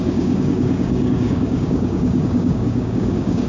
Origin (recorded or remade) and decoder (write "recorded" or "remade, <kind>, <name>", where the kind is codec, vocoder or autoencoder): remade, codec, DAC